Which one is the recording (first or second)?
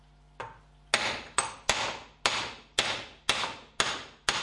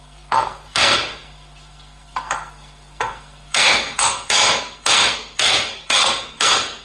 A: first